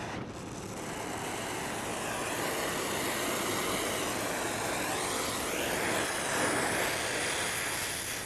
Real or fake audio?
real